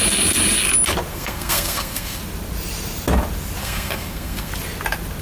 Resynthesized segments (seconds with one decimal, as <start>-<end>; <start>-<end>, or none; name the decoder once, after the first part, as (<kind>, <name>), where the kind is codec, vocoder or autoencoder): 1.1-2.2 (codec, SNAC); 3.6-4.5

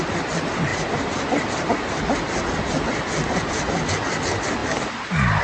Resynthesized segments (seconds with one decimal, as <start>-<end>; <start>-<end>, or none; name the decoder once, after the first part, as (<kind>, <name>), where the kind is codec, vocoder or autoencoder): none

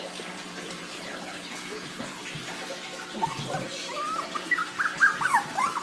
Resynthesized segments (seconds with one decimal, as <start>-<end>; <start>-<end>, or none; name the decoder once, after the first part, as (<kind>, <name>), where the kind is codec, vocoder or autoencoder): 0.9-2.2 (codec, HILCodec)

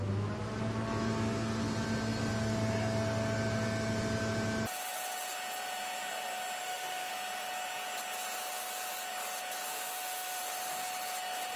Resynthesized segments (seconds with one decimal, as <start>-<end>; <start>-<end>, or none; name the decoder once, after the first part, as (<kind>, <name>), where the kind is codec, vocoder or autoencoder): 6.6-7.1 (autoencoder, DAC-VAE); 9.7-10.4

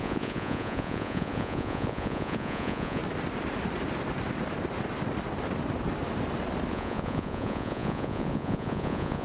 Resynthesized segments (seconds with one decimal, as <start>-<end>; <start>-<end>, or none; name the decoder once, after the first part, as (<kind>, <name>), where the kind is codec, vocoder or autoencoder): 0.0-3.0 (vocoder, Vocos); 6.7-9.2

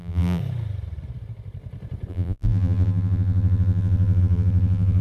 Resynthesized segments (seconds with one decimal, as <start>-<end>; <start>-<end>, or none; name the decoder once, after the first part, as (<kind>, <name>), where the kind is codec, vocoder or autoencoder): 0.0-0.4 (vocoder, BigVGAN v2); 2.1-5.0

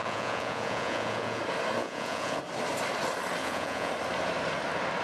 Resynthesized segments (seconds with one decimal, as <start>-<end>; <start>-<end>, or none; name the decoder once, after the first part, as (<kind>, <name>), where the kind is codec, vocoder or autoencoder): 0.0-1.4 (vocoder, Vocos); 1.8-2.4; 3.4-3.9